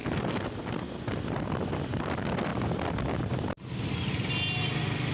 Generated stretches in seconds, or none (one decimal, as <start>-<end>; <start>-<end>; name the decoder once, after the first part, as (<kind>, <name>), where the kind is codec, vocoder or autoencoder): none